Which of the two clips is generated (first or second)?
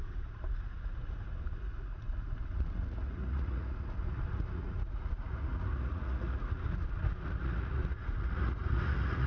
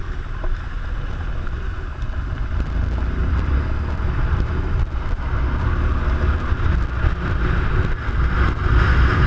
first